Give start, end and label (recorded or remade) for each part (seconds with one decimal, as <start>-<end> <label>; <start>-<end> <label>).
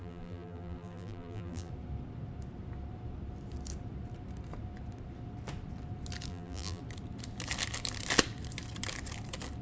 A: 0.0-1.7 remade; 1.7-6.3 recorded; 6.3-6.8 remade; 6.8-9.6 recorded